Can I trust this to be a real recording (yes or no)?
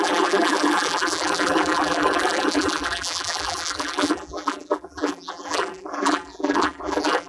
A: no